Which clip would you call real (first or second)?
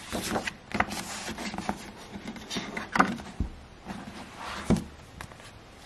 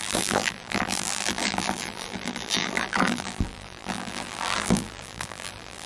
first